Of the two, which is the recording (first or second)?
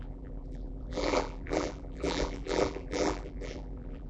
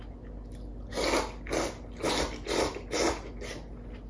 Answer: second